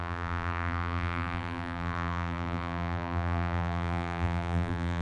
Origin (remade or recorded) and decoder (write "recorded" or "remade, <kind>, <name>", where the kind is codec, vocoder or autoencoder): remade, vocoder, BigVGAN v2